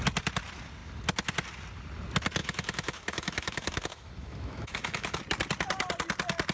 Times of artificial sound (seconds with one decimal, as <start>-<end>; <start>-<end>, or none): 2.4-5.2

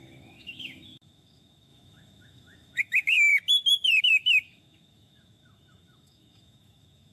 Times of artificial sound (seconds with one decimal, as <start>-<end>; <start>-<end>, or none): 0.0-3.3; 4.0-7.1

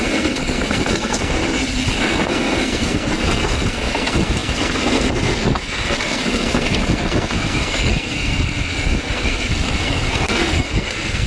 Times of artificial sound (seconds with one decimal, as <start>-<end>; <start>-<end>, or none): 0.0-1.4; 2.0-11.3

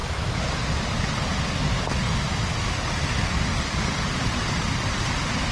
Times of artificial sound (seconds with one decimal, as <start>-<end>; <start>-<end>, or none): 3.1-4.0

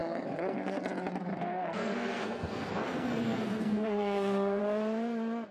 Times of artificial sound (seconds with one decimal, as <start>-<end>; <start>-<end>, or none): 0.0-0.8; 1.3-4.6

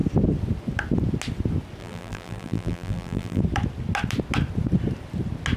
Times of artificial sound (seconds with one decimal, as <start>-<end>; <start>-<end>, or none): 1.8-3.4

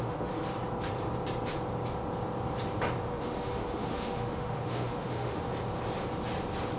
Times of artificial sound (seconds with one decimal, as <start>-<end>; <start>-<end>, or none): 0.0-0.4; 3.0-5.5

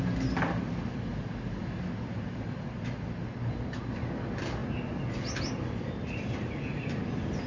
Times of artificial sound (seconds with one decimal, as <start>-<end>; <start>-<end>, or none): none